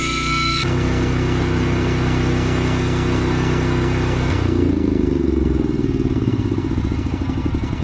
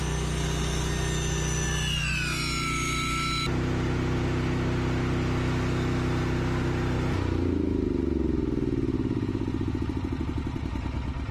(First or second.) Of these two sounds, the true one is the second